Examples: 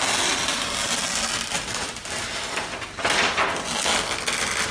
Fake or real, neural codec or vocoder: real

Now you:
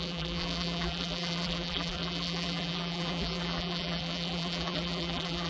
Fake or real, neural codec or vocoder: fake, vocoder, BigVGAN v2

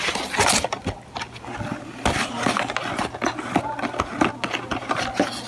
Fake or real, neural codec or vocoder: real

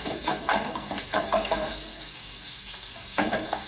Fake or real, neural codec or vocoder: fake, codec, SNAC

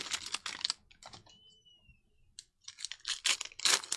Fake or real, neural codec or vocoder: real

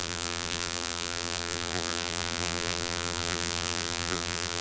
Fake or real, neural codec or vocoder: fake, vocoder, BigVGAN v2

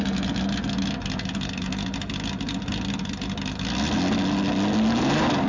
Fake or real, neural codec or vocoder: real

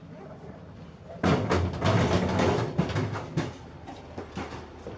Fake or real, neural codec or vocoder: real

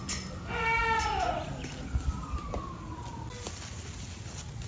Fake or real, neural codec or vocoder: real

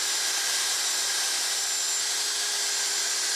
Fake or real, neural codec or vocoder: real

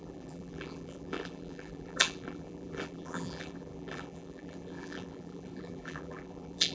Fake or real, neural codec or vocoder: fake, vocoder, BigVGAN v2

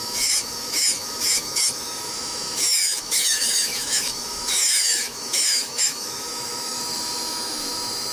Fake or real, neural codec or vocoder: fake, autoencoder, DAC-VAE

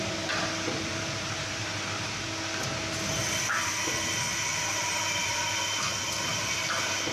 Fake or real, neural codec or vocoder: real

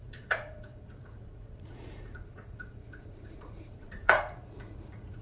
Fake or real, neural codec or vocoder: fake, vocoder, Vocos